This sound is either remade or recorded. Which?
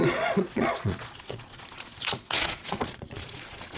remade